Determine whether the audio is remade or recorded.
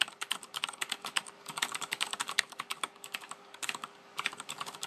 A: remade